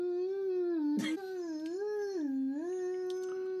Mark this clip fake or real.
real